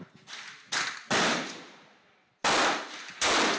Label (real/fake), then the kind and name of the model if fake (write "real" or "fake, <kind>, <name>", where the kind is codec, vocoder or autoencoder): real